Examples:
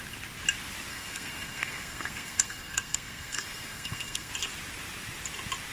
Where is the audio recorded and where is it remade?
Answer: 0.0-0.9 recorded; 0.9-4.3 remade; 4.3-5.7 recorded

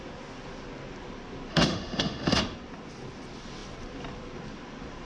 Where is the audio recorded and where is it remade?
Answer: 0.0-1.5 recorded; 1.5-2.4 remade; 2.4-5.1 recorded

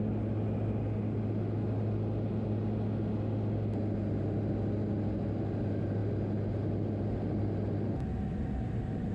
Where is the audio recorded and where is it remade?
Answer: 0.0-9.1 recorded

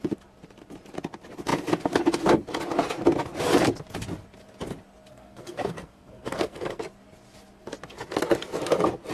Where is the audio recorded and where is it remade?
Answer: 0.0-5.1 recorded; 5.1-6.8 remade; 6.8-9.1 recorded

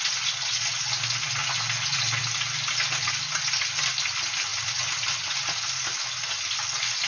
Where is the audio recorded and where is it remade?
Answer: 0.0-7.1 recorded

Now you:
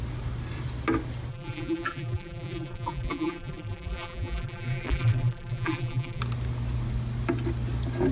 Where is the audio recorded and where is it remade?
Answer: 0.0-1.3 recorded; 1.3-6.2 remade; 6.2-8.1 recorded

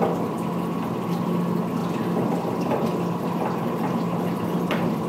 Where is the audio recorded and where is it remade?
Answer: 0.0-5.1 recorded